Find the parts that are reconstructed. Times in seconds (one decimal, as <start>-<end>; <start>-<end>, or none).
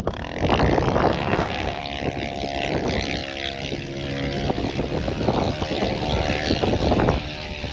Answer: 1.1-1.8